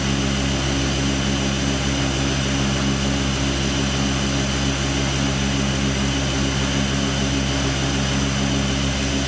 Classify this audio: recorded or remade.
recorded